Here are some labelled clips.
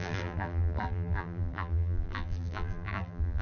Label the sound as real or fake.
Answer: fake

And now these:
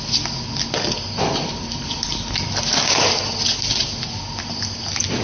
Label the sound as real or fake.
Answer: real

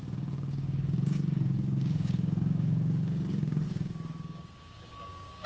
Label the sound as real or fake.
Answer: fake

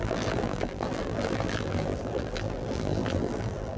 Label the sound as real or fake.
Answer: fake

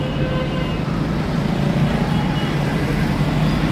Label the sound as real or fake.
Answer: real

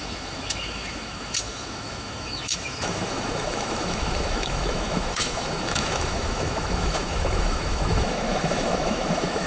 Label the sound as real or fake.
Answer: fake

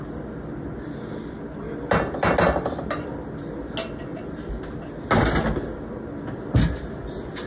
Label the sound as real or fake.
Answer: real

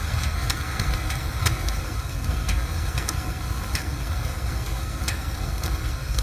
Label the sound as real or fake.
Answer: fake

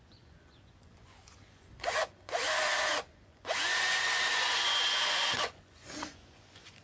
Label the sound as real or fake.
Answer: fake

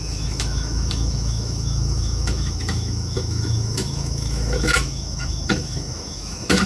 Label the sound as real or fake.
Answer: fake